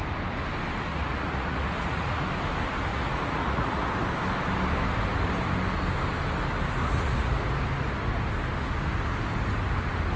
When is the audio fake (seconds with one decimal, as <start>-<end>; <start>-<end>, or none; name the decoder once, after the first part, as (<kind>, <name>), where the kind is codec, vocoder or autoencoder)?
0.9-2.2 (vocoder, Vocos); 2.9-3.9; 6.8-7.3